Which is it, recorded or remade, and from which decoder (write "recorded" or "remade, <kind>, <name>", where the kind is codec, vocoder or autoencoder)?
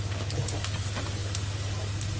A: recorded